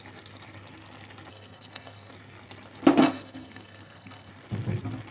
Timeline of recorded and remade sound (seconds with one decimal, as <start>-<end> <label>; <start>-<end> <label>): 0.0-1.3 recorded; 1.3-2.1 remade; 2.1-3.0 recorded; 3.0-4.3 remade; 4.3-5.1 recorded